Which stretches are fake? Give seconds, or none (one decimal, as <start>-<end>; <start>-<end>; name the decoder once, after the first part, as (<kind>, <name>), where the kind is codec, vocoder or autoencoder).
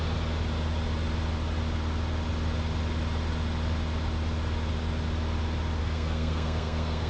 5.8-7.1 (codec, SNAC)